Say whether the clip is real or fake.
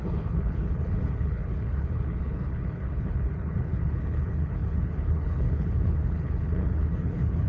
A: fake